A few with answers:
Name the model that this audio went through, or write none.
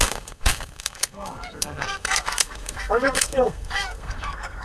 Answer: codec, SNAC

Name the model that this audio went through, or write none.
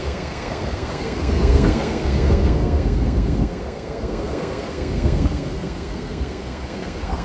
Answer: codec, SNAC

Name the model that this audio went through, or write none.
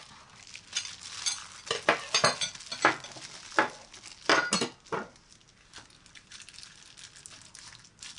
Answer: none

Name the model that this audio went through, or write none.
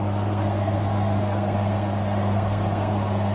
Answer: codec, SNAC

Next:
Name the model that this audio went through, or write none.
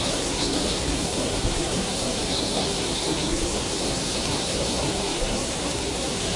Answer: codec, SNAC